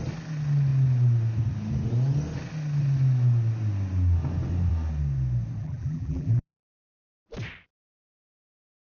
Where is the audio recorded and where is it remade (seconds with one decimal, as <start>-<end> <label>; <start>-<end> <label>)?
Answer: 0.0-5.6 recorded; 5.6-6.7 remade; 6.7-8.9 recorded